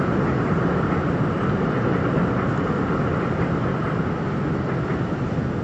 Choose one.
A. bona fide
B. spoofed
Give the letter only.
A